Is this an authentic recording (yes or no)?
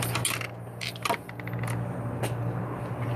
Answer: yes